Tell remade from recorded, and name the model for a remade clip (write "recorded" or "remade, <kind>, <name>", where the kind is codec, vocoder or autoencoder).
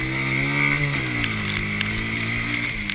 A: recorded